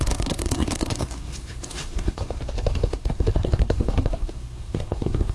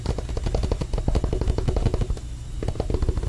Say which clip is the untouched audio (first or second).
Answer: second